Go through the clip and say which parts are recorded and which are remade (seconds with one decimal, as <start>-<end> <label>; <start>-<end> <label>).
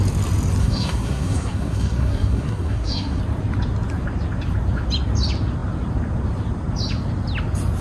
0.0-0.6 recorded; 0.6-3.2 remade; 3.2-7.8 recorded